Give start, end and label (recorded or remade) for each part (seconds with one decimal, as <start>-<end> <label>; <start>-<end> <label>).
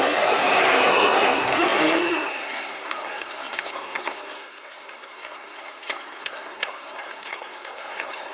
0.0-8.3 remade